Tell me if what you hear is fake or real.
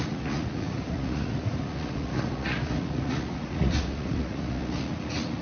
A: fake